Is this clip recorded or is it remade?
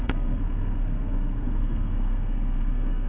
remade